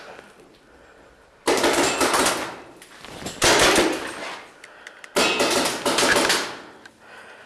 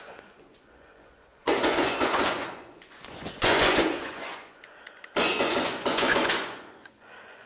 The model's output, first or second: second